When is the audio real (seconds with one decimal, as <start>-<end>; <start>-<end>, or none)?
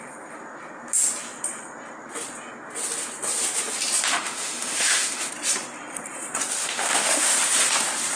0.0-4.1; 5.3-6.6; 7.4-8.2